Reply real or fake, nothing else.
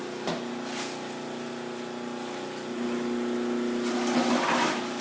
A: real